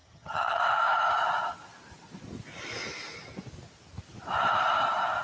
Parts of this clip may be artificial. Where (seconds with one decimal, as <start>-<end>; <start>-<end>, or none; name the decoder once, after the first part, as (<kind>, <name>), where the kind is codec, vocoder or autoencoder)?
0.0-0.6 (vocoder, HiFi-GAN)